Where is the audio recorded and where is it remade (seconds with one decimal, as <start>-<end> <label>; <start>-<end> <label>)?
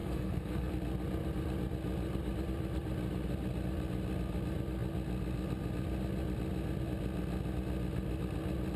0.0-0.7 remade; 0.7-8.8 recorded